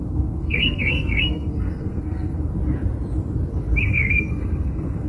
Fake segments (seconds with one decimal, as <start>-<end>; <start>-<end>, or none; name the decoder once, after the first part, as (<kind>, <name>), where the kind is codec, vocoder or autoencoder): 0.0-2.5 (codec, SNAC); 3.8-5.1